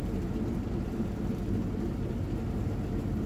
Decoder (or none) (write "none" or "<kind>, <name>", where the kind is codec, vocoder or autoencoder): none